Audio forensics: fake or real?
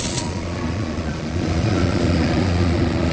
fake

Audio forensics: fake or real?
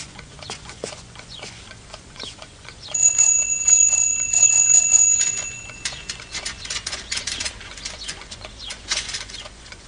fake